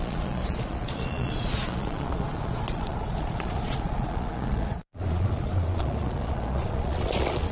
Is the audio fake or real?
fake